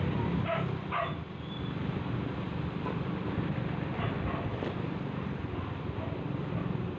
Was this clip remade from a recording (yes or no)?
yes